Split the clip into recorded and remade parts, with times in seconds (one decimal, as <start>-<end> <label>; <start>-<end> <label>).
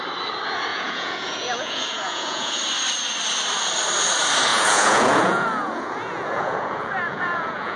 0.0-0.7 recorded; 0.7-2.6 remade; 2.6-4.5 recorded; 4.5-7.8 remade